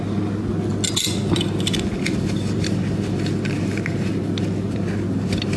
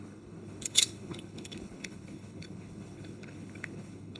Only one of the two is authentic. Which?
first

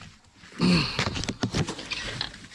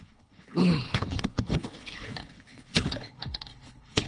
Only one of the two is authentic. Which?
first